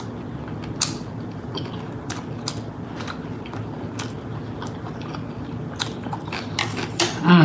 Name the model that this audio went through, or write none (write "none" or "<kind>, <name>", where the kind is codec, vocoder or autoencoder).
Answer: none